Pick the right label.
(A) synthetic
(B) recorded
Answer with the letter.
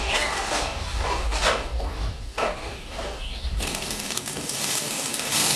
A